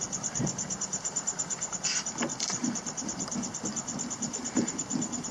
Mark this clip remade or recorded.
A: remade